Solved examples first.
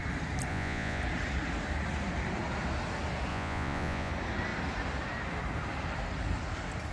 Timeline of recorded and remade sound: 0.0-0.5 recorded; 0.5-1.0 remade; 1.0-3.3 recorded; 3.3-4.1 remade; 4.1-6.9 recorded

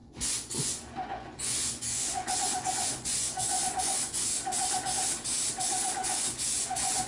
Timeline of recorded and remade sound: 0.0-4.3 remade; 4.3-6.0 recorded; 6.0-7.1 remade

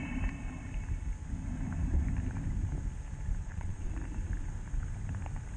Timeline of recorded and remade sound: 0.0-3.4 recorded; 3.4-3.9 remade; 3.9-5.6 recorded